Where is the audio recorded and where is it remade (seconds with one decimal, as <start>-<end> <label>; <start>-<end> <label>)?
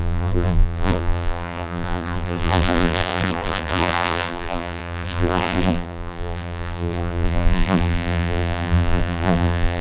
0.0-9.8 remade